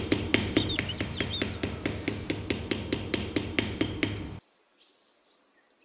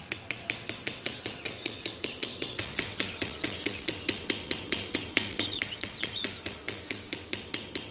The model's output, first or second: second